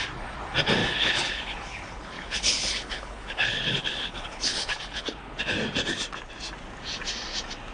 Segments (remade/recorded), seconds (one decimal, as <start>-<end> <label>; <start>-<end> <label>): 0.0-0.8 recorded; 0.8-5.4 remade; 5.4-7.7 recorded